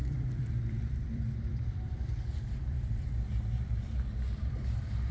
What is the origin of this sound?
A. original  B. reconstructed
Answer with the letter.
B